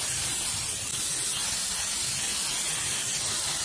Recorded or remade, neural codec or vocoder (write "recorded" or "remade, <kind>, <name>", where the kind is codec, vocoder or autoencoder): recorded